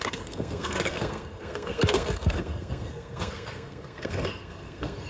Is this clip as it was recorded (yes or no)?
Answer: no